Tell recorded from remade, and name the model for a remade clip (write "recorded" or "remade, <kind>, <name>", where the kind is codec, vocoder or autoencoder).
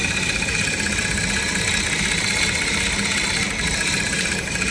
recorded